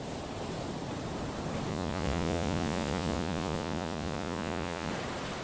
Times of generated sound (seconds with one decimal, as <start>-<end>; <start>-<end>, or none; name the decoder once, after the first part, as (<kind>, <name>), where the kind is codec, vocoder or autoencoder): 1.7-4.9 (vocoder, Vocos)